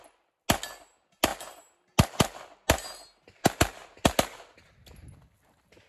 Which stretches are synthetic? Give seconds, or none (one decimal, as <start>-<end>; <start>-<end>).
none